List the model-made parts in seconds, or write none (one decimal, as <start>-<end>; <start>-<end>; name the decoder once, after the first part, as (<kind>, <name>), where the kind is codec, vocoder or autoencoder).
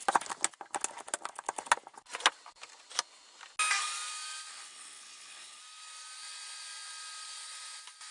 4.5-5.6 (codec, HILCodec)